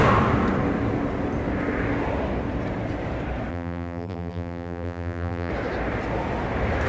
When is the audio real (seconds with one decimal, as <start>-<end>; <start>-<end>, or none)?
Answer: 0.0-3.5; 5.5-6.9

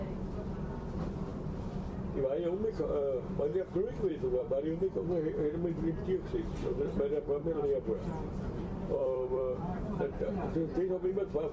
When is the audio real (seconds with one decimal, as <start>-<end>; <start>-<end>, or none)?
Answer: 0.0-3.5; 4.8-7.4; 10.0-11.5

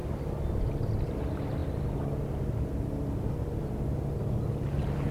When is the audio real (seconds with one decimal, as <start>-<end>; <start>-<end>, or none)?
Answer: 0.0-5.1